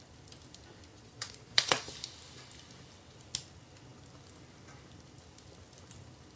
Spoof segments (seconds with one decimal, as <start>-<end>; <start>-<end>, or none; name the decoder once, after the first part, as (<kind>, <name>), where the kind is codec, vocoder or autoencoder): 0.9-1.8 (vocoder, Vocos)